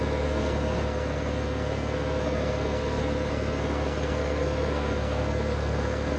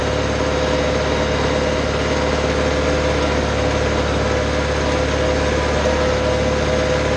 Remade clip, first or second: first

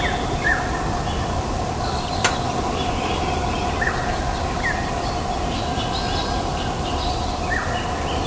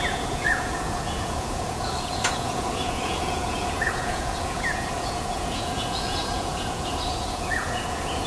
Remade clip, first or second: second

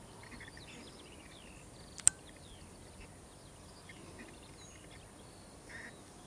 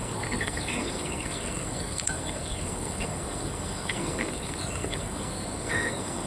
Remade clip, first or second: second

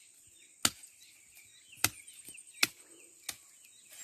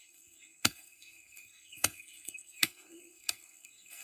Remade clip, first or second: second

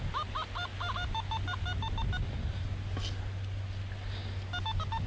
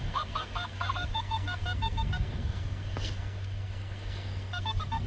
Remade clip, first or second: second